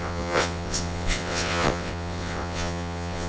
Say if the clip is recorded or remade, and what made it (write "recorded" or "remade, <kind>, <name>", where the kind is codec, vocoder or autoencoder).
remade, vocoder, WaveNeXt